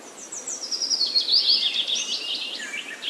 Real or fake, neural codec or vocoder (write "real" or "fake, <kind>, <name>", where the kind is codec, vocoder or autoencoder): real